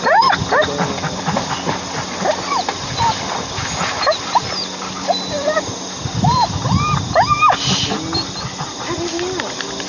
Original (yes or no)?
yes